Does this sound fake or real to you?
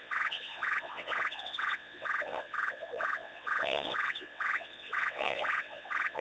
fake